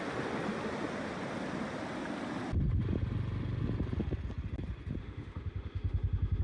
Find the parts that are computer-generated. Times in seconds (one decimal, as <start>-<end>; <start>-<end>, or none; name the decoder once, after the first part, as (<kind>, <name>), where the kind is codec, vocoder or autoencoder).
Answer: 5.0-6.4 (autoencoder, DAC-VAE)